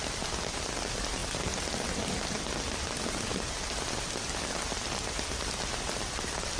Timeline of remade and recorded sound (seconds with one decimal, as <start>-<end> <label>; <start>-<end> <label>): 0.0-6.6 recorded